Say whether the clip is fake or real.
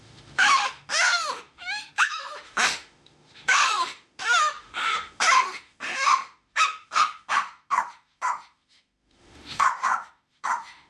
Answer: fake